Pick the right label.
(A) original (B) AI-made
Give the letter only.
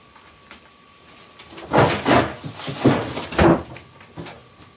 A